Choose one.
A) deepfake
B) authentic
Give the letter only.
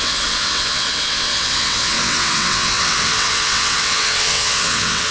A